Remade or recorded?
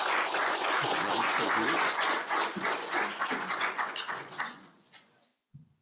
remade